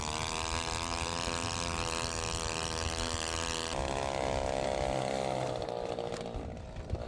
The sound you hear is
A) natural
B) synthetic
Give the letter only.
A